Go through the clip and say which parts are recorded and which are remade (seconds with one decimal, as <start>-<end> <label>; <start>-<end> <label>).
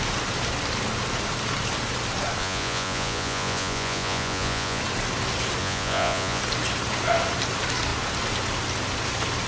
0.0-2.4 recorded; 2.4-4.8 remade; 4.8-5.6 recorded; 5.6-6.4 remade; 6.4-9.5 recorded